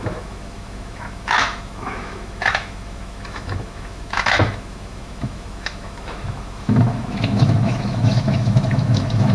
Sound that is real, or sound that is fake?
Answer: fake